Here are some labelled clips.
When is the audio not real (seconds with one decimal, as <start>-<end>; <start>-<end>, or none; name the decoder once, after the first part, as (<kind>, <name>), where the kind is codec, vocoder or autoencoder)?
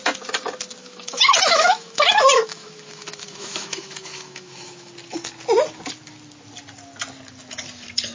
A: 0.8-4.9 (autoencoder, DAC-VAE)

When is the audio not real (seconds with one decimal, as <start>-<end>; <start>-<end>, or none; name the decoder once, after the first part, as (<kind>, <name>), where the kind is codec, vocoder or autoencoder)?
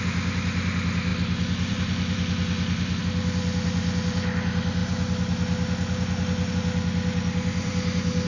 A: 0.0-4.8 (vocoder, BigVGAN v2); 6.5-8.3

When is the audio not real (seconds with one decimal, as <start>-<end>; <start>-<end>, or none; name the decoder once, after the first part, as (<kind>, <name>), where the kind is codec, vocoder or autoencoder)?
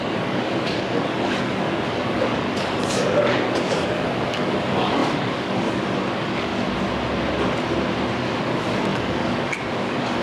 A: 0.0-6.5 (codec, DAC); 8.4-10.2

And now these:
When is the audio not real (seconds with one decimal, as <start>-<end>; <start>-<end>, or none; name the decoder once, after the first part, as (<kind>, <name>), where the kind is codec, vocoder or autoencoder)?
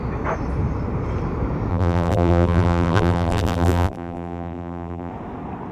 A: 1.7-5.1 (vocoder, BigVGAN v2)